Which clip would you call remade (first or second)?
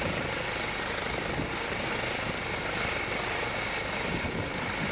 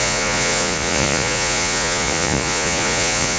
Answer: second